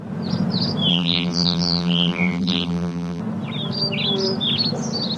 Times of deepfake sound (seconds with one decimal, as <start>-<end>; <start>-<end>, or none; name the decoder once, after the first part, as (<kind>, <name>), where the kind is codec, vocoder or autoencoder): 0.9-3.2 (vocoder, BigVGAN v2)